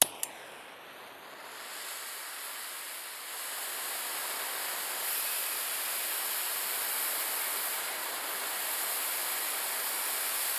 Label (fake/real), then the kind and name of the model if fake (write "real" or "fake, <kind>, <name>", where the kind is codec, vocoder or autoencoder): real